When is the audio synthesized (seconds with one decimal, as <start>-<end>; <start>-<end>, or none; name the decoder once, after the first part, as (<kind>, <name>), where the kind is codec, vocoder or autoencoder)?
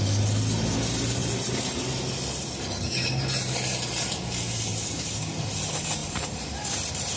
1.2-1.9 (vocoder, BigVGAN v2); 4.7-5.2; 6.0-6.5